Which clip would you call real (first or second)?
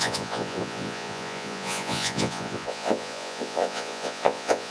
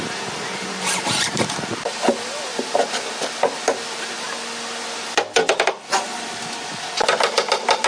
second